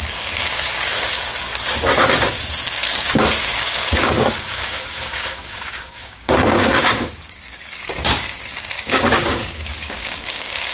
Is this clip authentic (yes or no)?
no